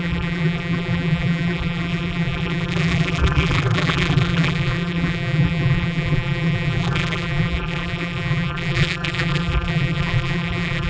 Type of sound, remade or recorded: remade